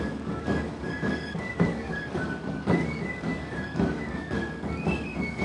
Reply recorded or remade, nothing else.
remade